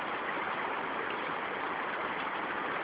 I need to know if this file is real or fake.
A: real